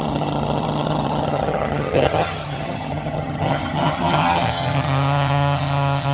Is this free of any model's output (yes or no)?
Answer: no